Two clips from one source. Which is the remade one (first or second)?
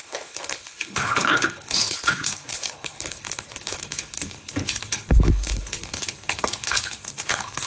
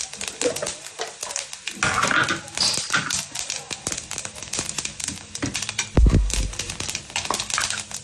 first